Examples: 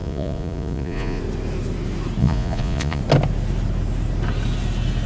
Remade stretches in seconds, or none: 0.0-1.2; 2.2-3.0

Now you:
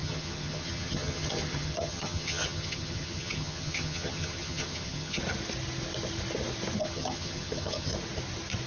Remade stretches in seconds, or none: 0.0-5.2; 6.8-7.9

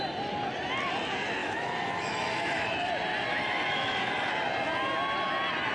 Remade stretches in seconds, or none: 1.4-2.9; 3.3-4.3

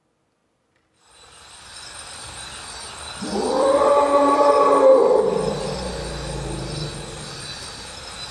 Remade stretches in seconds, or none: 0.4-3.9